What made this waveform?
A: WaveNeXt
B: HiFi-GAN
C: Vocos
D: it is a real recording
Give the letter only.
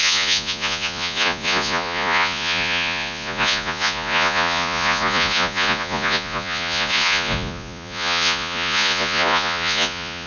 C